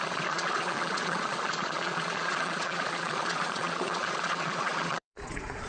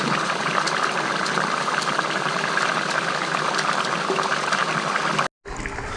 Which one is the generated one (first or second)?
first